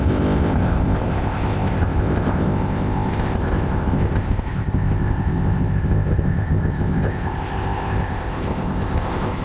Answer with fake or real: fake